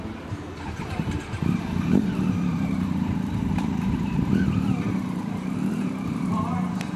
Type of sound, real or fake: fake